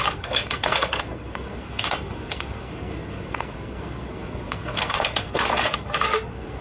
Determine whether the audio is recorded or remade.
remade